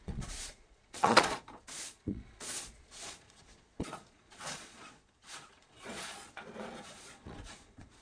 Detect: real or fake fake